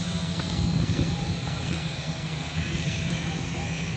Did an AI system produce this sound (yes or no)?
yes